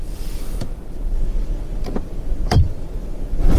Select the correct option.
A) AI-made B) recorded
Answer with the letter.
A